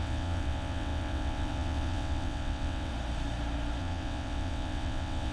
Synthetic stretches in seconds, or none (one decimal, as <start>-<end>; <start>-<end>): 0.0-2.9; 3.8-5.3